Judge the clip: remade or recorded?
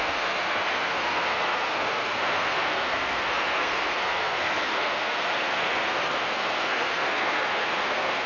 remade